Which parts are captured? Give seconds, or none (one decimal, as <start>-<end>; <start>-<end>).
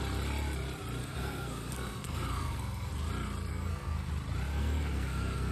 0.0-1.0; 2.9-3.5; 4.1-4.5